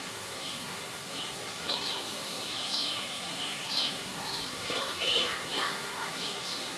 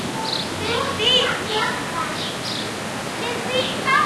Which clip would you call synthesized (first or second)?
first